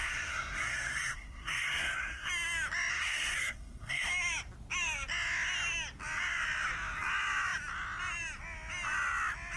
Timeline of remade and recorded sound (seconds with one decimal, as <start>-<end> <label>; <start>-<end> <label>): 0.0-2.3 remade; 2.3-2.9 recorded; 2.9-4.1 remade; 4.1-9.6 recorded